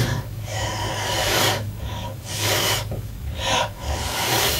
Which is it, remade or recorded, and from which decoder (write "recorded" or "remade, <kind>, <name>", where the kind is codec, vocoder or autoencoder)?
remade, codec, DAC